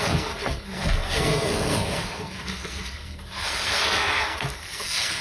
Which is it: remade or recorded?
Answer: remade